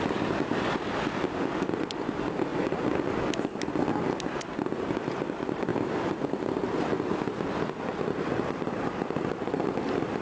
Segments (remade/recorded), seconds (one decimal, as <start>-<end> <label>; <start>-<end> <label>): 0.0-10.2 recorded